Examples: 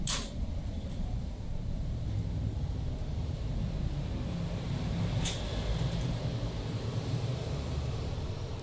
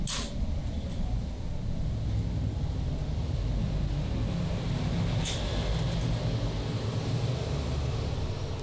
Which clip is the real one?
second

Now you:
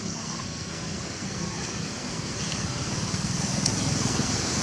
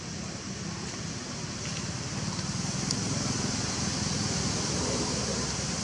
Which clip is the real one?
second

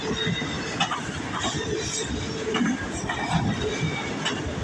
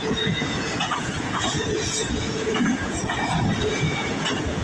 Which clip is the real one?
first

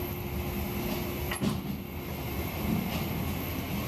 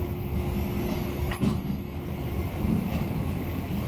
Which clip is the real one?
first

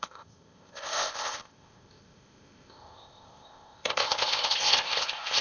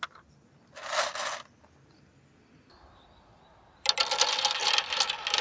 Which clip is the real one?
second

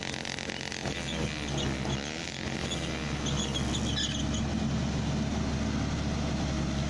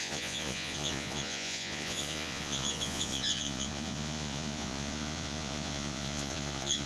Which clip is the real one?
first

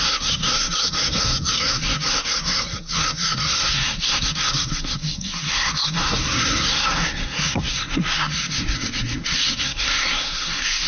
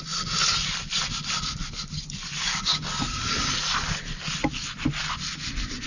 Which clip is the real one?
second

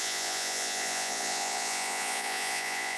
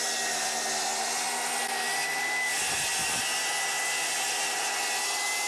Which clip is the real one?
second